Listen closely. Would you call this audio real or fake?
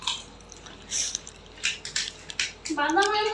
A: real